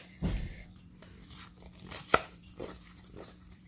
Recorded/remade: remade